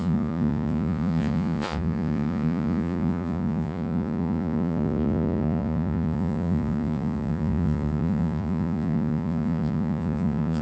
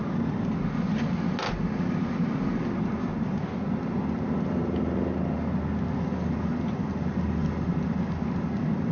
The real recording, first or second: second